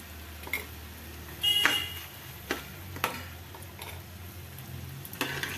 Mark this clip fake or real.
real